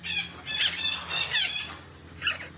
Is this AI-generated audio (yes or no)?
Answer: no